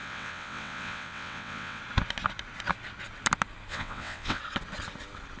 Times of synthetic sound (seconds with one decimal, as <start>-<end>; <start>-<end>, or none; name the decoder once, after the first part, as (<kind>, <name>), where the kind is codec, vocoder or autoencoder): 0.0-1.8 (vocoder, WaveNeXt); 3.7-4.4